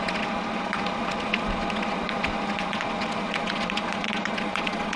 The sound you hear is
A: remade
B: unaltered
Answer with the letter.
A